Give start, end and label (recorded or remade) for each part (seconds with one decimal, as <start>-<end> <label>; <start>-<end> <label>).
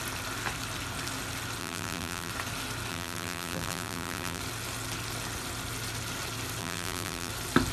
0.0-1.6 recorded; 1.6-2.3 remade; 2.3-2.9 recorded; 2.9-4.4 remade; 4.4-6.6 recorded; 6.6-7.3 remade; 7.3-7.7 recorded